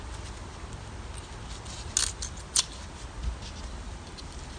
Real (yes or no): yes